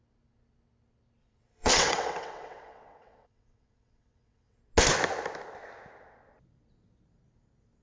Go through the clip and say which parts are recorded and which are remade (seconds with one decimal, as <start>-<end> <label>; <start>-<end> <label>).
0.0-1.2 recorded; 1.2-4.6 remade; 4.6-7.8 recorded